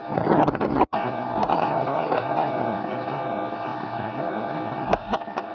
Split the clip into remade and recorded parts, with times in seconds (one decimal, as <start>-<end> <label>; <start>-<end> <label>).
0.0-5.5 remade